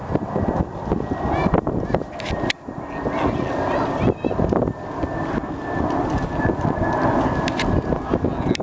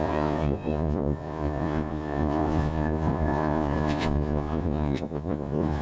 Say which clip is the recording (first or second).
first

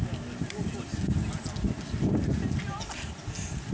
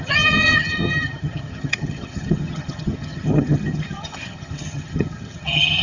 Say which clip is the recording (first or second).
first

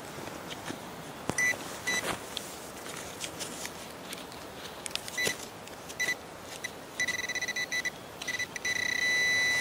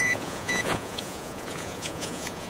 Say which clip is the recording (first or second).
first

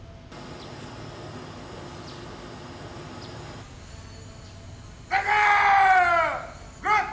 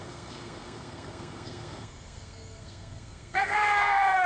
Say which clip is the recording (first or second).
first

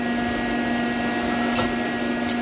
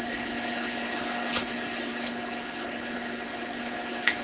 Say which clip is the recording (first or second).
first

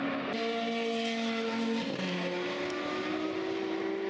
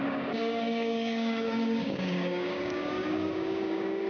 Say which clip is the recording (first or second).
first